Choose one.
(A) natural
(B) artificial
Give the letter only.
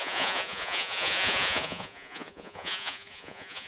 B